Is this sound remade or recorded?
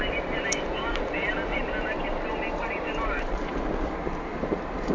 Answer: remade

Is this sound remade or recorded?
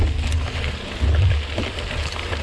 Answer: recorded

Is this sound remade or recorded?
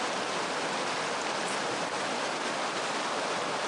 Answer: recorded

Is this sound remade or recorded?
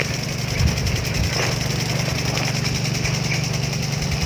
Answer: recorded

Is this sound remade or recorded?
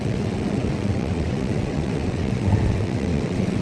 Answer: remade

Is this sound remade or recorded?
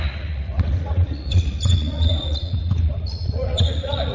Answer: remade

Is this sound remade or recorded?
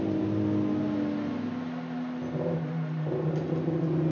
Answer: recorded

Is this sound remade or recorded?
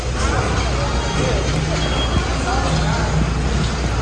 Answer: recorded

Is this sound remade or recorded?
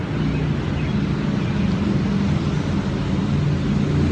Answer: recorded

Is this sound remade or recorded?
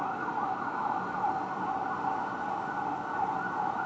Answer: recorded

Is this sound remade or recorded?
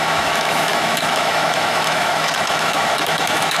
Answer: remade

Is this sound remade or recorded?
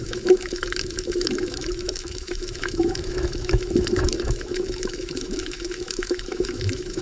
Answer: remade